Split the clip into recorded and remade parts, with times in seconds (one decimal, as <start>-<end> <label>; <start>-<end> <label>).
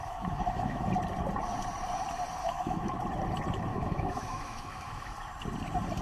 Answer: 0.0-0.9 remade; 0.9-2.4 recorded; 2.4-3.0 remade; 3.0-3.7 recorded; 3.7-5.1 remade; 5.1-6.0 recorded